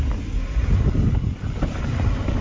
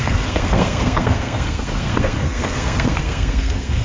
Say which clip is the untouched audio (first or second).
first